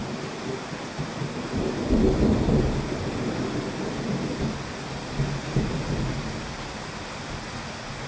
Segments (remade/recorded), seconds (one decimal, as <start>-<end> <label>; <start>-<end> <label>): 0.0-8.1 recorded